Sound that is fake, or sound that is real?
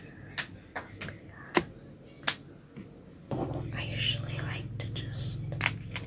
real